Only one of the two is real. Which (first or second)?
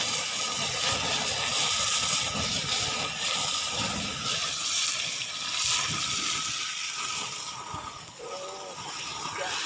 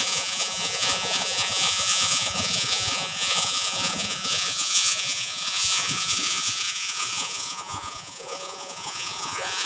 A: first